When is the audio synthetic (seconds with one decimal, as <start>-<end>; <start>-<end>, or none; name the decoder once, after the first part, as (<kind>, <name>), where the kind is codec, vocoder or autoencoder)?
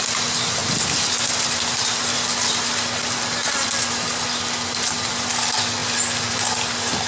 none